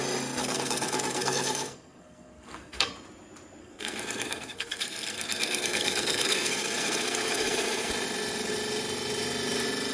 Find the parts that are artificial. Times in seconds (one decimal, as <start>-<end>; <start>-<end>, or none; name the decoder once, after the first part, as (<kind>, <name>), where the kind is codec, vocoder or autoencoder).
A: 0.4-2.9 (codec, SNAC); 3.6-7.9